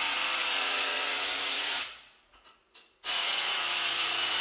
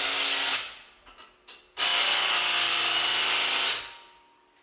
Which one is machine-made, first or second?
first